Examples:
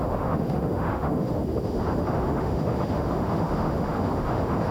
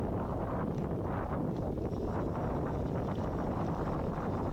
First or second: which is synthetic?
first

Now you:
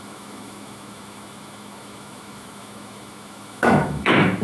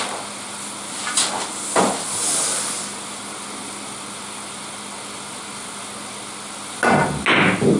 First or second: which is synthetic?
first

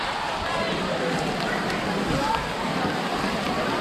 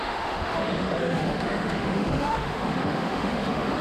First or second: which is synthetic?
second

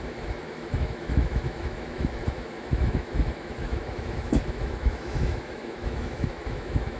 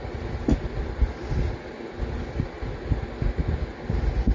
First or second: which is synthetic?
first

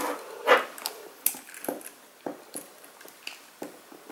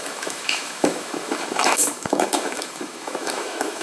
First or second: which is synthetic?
second